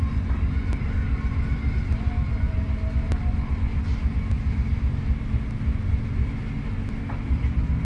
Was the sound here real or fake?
real